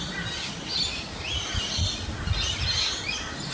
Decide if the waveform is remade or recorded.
recorded